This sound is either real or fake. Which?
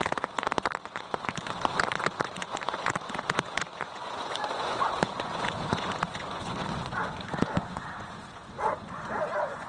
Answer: fake